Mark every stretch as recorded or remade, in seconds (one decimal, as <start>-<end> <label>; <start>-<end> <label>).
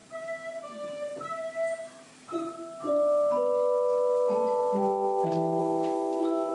0.0-5.6 recorded; 5.6-6.5 remade